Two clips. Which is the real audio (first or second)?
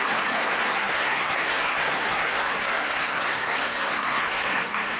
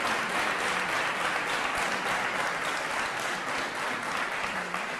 second